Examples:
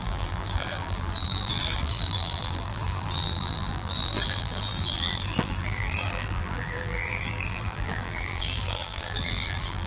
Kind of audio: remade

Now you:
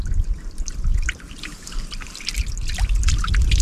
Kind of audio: recorded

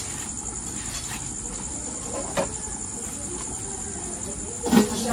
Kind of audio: recorded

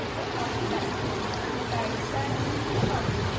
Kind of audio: recorded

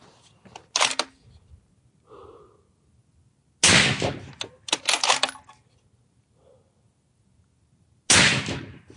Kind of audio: recorded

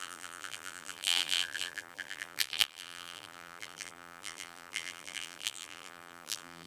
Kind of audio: remade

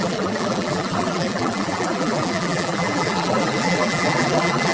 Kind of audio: remade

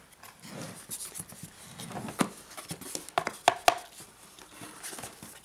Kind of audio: recorded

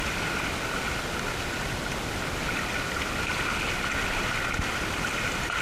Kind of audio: recorded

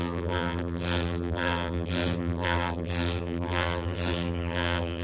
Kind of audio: remade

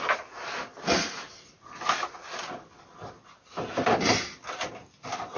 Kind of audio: recorded